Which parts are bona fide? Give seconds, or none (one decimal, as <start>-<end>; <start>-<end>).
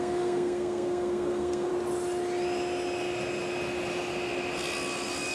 1.7-5.3